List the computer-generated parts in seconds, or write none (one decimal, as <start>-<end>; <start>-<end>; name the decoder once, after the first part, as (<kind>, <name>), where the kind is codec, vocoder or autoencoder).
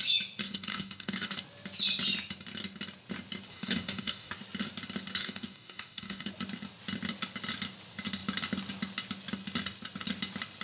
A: 0.4-1.4 (codec, DAC); 3.5-4.3; 5.2-6.3